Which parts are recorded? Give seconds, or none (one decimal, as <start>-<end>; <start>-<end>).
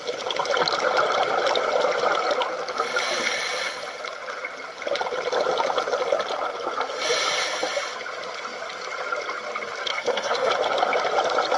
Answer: 0.0-9.9; 10.5-11.6